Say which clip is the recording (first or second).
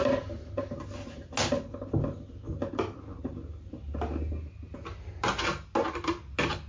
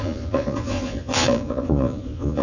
first